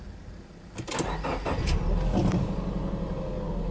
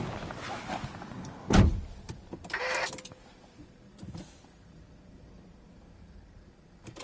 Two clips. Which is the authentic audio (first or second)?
first